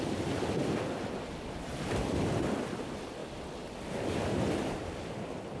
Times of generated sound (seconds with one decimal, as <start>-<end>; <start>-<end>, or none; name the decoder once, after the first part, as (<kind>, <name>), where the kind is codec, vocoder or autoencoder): none